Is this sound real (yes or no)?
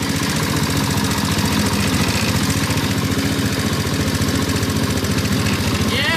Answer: yes